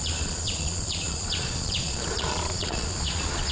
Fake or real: fake